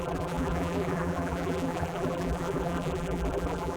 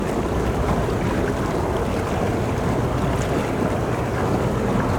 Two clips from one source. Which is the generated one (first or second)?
first